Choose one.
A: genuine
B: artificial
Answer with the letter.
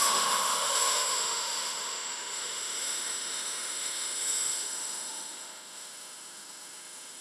B